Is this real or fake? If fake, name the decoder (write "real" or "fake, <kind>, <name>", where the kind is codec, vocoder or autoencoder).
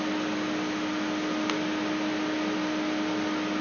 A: real